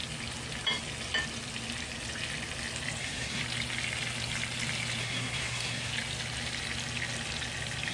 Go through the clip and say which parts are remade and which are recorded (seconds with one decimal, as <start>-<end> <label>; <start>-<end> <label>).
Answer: 0.0-3.0 recorded; 3.0-3.4 remade; 3.4-5.0 recorded; 5.0-5.9 remade; 5.9-7.9 recorded